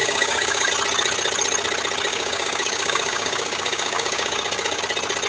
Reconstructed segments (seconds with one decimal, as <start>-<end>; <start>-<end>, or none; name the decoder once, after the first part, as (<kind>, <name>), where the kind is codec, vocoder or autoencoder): 0.0-0.7 (codec, DAC); 2.1-4.8